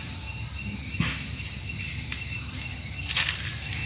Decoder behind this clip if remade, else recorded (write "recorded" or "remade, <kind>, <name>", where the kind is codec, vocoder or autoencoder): remade, vocoder, BigVGAN v2